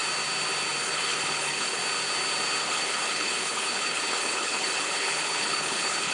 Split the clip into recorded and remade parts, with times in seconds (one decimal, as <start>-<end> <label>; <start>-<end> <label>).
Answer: 0.0-0.8 recorded; 0.8-1.8 remade; 1.8-2.6 recorded; 2.6-6.1 remade